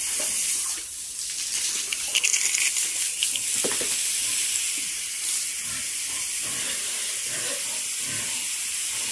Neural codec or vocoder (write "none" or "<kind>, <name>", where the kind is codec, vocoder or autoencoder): vocoder, BigVGAN v2